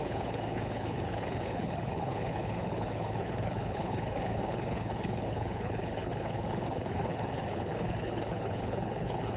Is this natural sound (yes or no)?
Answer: no